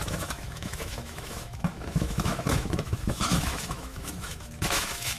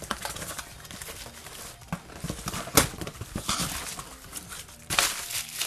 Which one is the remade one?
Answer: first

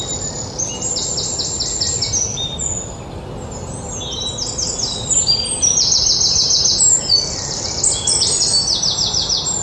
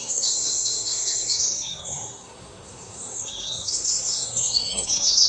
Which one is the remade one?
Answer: second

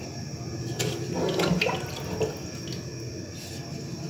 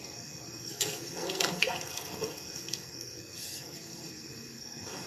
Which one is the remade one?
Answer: second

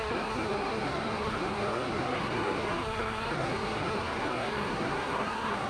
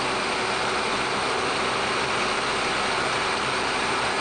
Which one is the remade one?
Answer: first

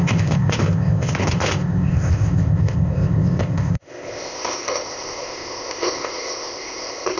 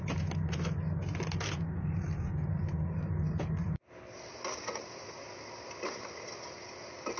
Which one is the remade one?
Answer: first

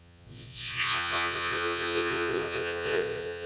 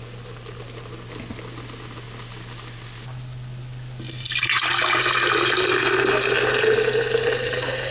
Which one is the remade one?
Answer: first